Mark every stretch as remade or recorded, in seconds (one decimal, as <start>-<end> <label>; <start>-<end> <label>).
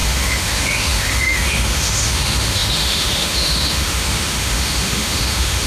0.0-5.7 remade